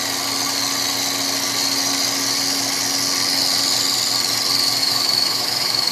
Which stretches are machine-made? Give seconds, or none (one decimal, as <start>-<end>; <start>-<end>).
4.8-5.9